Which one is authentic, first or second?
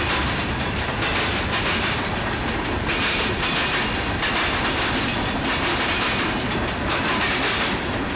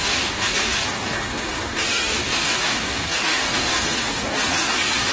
first